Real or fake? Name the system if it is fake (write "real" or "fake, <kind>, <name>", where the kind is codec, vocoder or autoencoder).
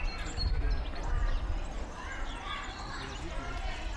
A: real